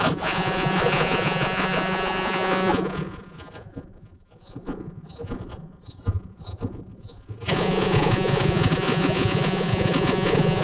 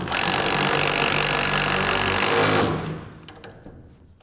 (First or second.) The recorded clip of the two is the second